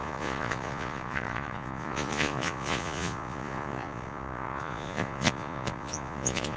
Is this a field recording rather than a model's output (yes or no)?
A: no